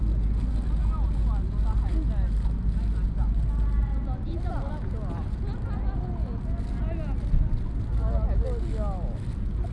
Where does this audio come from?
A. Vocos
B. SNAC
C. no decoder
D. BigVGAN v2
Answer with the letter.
C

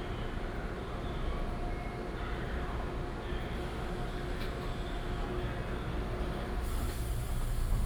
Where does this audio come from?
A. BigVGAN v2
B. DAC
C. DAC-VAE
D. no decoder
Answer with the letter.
D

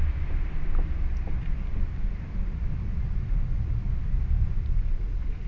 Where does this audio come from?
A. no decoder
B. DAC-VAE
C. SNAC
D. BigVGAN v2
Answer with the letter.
A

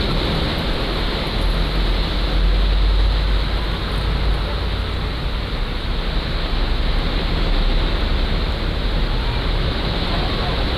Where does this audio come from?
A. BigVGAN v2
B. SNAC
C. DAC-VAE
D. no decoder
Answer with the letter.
D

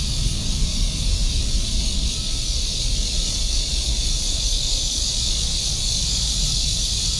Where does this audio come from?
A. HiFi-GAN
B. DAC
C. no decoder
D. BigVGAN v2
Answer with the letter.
B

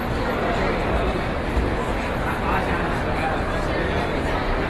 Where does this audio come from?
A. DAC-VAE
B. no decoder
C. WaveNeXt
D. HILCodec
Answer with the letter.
B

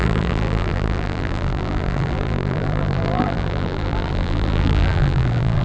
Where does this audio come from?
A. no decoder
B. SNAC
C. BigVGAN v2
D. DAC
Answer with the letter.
C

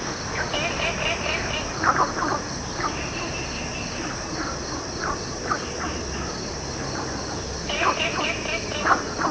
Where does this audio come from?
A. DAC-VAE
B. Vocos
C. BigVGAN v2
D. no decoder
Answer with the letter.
D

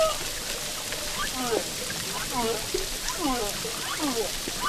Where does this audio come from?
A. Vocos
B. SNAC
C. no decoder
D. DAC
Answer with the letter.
C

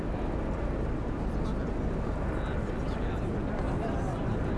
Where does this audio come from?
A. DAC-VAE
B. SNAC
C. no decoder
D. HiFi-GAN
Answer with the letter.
C